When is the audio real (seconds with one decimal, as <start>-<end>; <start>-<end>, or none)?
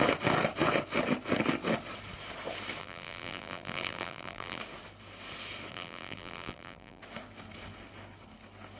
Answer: 0.0-2.8; 4.6-5.7; 7.0-8.8